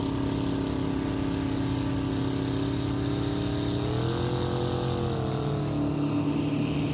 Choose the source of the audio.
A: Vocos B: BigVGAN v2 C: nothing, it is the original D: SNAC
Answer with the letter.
C